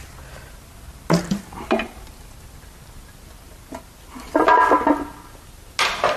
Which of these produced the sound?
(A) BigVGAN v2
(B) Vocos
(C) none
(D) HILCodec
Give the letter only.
C